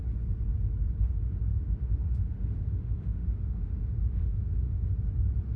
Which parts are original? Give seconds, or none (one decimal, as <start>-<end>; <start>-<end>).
0.0-1.5; 4.9-5.6